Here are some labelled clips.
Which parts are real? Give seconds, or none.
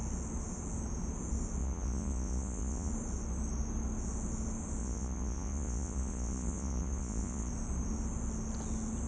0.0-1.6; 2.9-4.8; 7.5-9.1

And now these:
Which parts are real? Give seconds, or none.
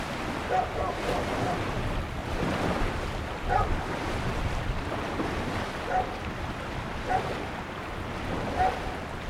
0.0-2.2; 7.1-9.3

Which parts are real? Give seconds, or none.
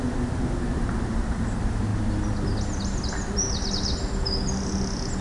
0.0-5.2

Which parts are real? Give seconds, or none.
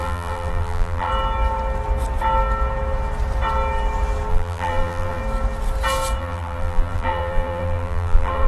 1.1-4.3; 5.2-6.2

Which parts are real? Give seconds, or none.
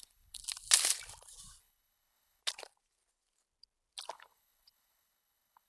0.4-1.6; 2.4-4.1